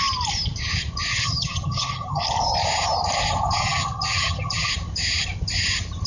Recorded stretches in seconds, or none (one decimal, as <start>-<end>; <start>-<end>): 0.0-1.1; 2.2-3.6; 4.7-6.1